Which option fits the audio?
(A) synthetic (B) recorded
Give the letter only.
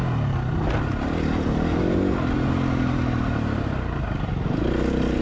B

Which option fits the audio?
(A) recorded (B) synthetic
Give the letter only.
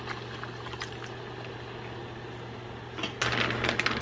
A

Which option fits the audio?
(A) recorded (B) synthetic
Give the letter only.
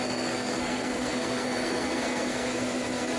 B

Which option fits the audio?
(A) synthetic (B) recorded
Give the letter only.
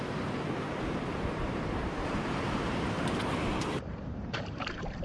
A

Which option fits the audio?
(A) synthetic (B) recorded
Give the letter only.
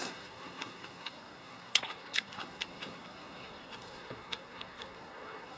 A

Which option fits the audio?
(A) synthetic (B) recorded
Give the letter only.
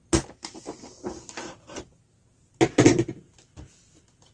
B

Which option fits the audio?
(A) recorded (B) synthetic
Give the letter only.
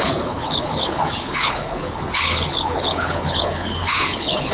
B